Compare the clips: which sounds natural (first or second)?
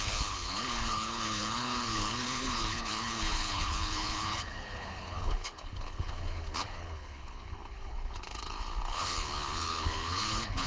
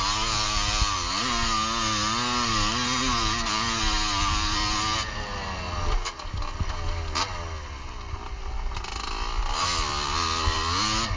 second